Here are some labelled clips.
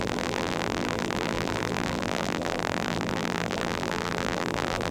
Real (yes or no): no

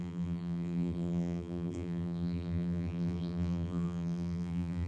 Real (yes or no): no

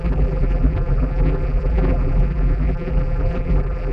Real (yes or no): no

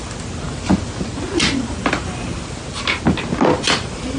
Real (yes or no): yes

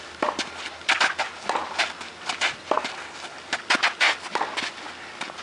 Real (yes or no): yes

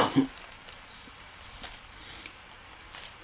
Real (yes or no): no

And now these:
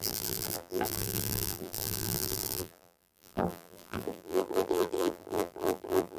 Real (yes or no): no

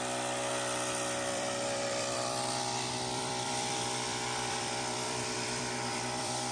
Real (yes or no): no